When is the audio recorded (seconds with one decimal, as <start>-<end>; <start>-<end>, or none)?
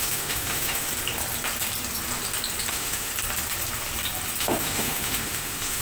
0.9-2.7; 3.1-4.4